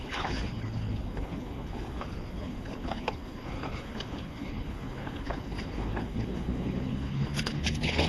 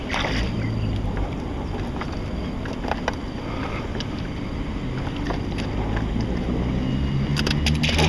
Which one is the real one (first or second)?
second